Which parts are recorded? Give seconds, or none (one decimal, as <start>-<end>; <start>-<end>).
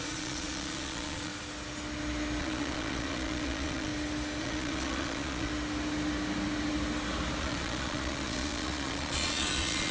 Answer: 1.3-2.4; 3.9-4.4; 5.5-7.4